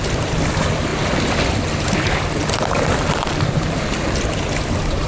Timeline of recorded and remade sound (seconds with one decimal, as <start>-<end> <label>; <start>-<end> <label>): 0.0-5.1 recorded